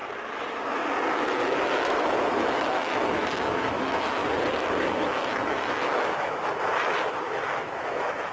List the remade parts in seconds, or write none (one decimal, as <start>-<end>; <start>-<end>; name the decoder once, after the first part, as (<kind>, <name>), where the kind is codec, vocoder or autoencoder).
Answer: 1.1-4.2 (autoencoder, DAC-VAE); 4.8-8.3